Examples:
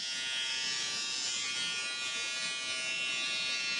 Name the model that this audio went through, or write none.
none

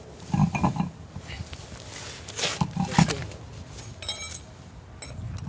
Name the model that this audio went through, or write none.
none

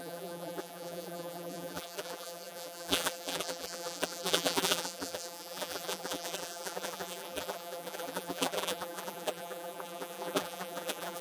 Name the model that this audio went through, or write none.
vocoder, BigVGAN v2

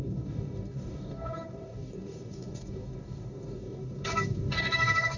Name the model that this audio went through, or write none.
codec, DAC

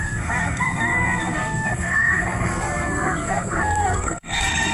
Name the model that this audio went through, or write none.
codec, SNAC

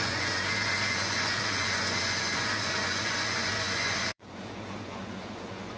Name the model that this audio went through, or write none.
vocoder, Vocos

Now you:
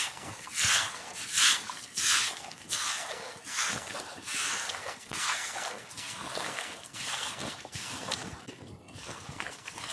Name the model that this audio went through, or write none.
codec, SNAC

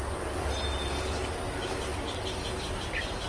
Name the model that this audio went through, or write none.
none